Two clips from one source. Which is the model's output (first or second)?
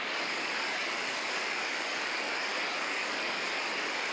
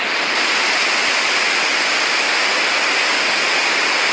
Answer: first